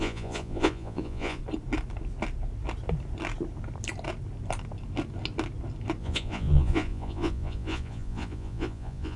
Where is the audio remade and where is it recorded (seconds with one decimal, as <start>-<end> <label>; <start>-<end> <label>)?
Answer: 0.0-1.4 remade; 1.4-6.0 recorded; 6.0-9.2 remade